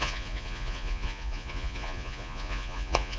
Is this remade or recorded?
remade